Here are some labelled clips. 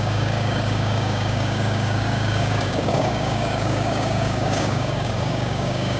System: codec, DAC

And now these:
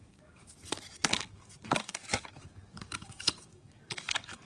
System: codec, DAC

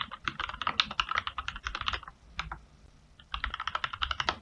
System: none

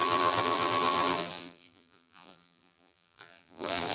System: vocoder, BigVGAN v2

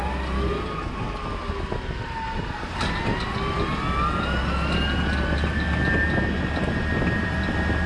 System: none